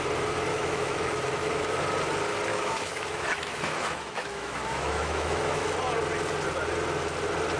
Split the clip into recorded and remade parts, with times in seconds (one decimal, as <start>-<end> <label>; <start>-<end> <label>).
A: 0.0-0.5 recorded; 0.5-1.8 remade; 1.8-2.5 recorded; 2.5-5.6 remade; 5.6-7.6 recorded